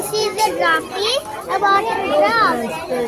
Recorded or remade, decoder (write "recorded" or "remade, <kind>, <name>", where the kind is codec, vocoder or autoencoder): recorded